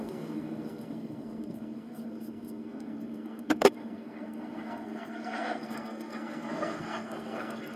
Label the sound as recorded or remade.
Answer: remade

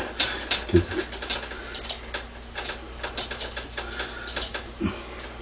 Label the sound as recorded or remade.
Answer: recorded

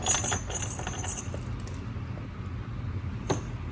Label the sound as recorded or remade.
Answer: recorded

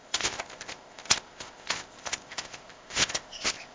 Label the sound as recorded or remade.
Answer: remade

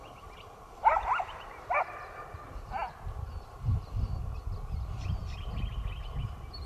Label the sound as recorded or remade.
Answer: recorded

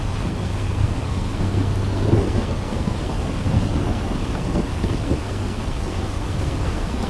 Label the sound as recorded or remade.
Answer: remade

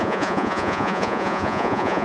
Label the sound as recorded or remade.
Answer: remade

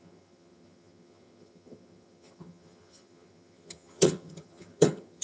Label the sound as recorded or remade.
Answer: remade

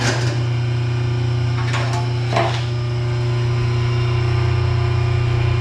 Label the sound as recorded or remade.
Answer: recorded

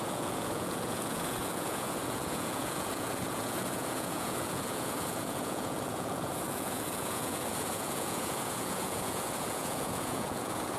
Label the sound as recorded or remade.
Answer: remade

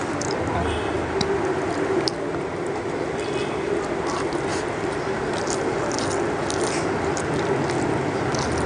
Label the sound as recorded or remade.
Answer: recorded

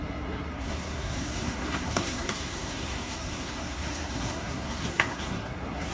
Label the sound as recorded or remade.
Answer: remade